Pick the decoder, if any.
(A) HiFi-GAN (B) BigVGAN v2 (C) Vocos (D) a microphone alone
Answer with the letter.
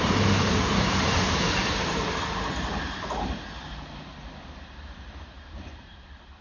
B